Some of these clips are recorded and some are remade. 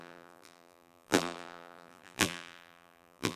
remade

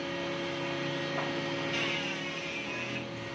recorded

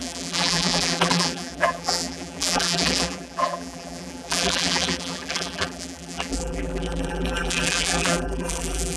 remade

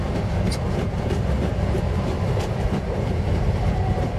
remade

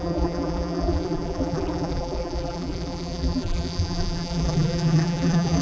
remade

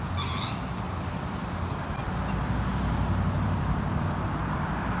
remade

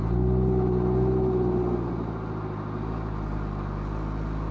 recorded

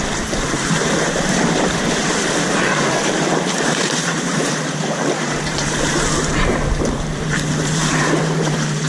remade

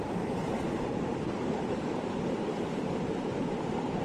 remade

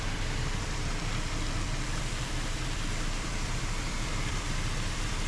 remade